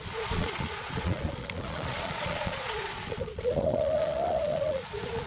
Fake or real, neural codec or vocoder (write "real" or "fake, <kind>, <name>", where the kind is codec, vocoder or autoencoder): fake, vocoder, Vocos